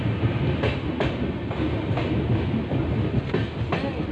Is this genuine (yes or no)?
yes